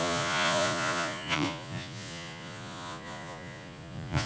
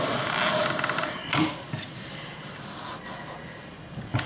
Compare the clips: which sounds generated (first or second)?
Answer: first